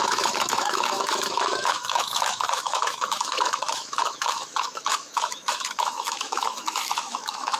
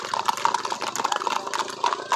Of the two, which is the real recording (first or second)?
second